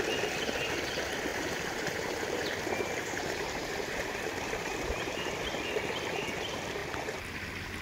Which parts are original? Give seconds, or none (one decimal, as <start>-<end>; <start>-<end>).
0.0-1.3; 5.3-7.8